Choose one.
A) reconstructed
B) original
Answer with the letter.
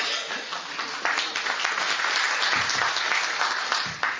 B